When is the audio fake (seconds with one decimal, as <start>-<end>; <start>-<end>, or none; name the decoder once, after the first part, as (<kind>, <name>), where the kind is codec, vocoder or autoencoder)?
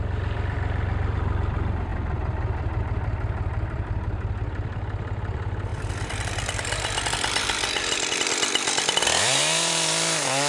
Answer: 0.0-10.5 (vocoder, BigVGAN v2)